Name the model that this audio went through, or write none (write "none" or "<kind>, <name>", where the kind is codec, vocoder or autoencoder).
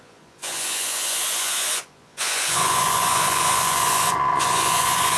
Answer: vocoder, Vocos